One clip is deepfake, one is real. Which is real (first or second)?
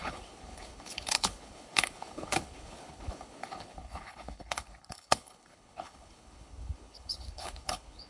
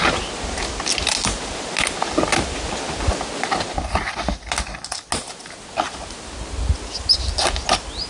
second